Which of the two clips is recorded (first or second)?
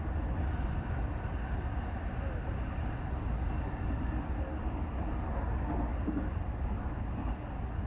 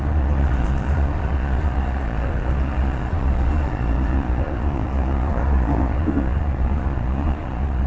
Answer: first